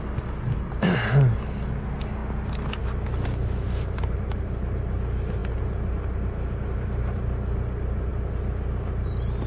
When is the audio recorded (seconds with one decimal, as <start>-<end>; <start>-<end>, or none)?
0.0-9.5